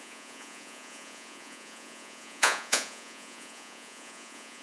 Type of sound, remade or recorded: remade